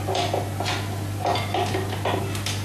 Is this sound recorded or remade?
recorded